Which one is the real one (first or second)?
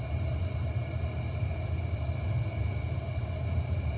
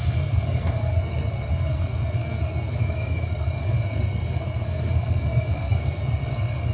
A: first